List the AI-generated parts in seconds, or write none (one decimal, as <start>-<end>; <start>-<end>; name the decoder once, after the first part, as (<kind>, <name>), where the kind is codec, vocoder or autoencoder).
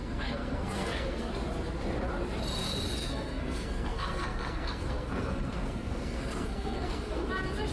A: 0.0-1.3 (codec, SNAC); 3.0-7.3